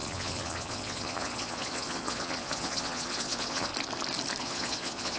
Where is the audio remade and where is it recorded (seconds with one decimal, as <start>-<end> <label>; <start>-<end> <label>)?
0.0-3.7 remade; 3.7-4.4 recorded; 4.4-5.2 remade